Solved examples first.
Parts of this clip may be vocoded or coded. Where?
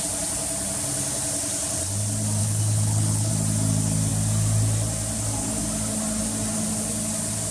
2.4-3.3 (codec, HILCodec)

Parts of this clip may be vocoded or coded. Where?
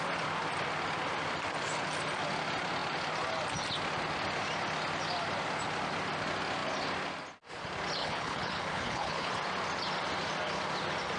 8.0-9.3 (codec, HILCodec)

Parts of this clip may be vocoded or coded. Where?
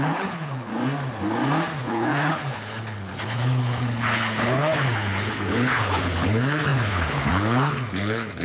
0.0-0.7 (codec, HILCodec); 1.8-8.4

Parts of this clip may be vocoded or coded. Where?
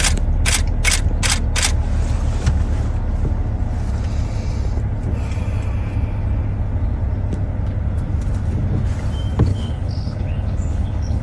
9.5-11.2 (codec, HILCodec)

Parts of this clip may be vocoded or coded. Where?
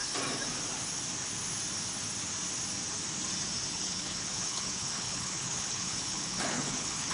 3.7-7.1 (codec, HILCodec)